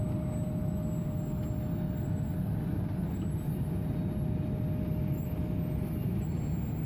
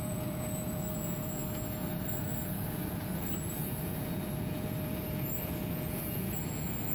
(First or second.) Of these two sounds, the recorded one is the first